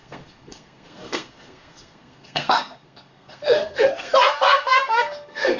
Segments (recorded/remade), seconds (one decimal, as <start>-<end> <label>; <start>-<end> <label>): 0.0-5.6 remade